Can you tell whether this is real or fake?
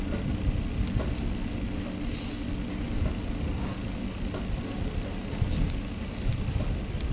real